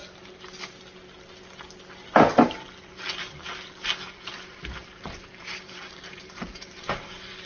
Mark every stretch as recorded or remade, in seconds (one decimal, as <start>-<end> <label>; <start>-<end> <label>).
0.0-4.2 recorded; 4.2-7.5 remade